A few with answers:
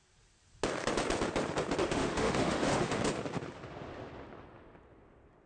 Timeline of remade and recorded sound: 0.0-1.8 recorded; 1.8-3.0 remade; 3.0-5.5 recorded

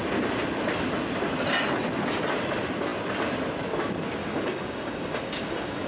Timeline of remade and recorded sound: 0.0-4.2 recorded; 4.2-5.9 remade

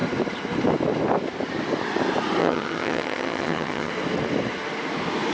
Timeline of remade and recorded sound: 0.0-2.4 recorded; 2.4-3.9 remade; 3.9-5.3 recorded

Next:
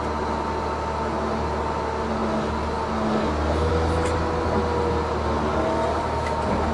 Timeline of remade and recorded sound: 0.0-6.7 recorded

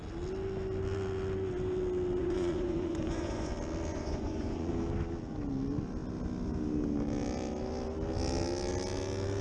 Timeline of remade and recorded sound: 0.0-2.2 recorded; 2.2-3.5 remade; 3.5-3.9 recorded; 3.9-4.7 remade; 4.7-9.4 recorded

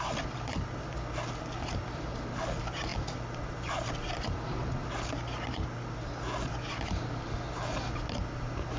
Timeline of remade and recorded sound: 0.0-8.8 recorded